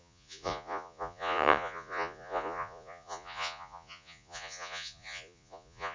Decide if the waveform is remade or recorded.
remade